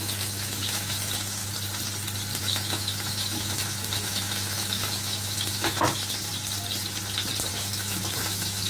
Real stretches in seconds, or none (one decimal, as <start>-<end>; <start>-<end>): 1.4-2.4; 6.3-7.5